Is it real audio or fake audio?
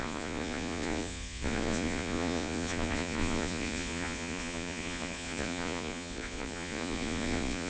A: fake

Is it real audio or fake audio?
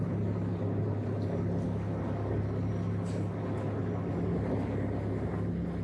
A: real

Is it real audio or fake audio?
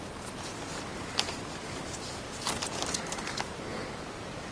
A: fake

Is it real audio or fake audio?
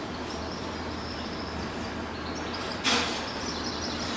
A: fake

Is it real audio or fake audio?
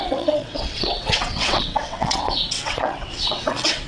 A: fake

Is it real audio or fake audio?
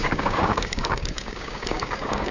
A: fake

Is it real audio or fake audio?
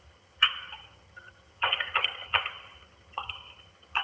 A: fake